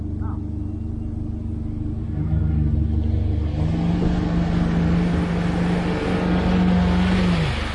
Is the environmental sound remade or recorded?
recorded